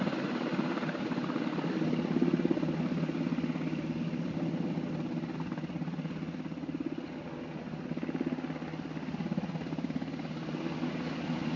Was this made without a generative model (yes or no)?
yes